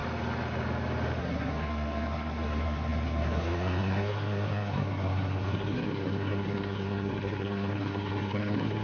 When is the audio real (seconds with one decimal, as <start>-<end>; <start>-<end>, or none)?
0.0-1.2